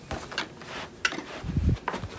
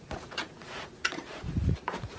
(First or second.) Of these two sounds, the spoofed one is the second